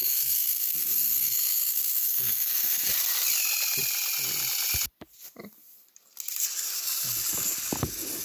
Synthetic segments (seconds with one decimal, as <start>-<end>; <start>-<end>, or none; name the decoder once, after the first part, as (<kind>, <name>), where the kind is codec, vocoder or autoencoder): 0.0-2.9 (codec, SNAC)